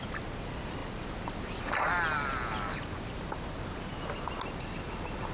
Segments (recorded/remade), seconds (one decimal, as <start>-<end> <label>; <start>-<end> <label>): 0.0-5.3 recorded